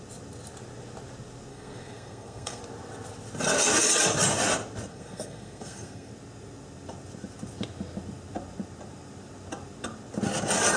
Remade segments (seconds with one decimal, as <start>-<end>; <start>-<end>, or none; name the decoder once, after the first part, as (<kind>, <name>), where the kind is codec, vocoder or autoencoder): 1.5-2.6 (codec, SNAC); 4.9-6.1

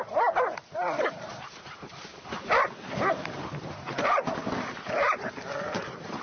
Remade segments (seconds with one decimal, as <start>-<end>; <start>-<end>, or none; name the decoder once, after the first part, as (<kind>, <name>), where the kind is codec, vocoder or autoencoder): 0.0-2.1 (vocoder, BigVGAN v2); 3.1-6.2

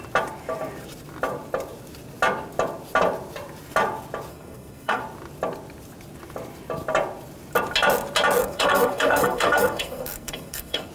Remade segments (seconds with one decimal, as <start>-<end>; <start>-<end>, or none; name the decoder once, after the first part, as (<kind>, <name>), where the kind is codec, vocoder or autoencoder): 4.3-5.0 (codec, SNAC); 8.4-10.9